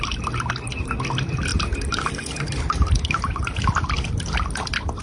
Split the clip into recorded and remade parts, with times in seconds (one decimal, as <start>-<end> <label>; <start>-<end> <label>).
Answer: 0.0-5.0 recorded